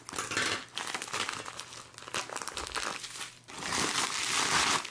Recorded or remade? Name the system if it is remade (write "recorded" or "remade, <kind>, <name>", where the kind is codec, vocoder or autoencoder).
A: recorded